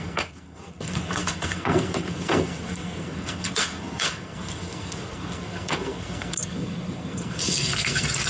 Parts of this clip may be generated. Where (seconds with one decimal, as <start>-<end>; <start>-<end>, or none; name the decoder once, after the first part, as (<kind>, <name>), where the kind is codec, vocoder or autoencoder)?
0.0-8.3 (codec, SNAC)